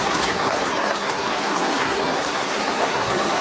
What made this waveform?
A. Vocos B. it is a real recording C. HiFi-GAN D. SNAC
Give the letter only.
D